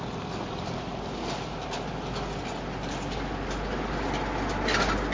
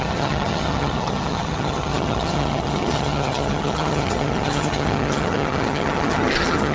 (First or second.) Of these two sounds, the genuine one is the first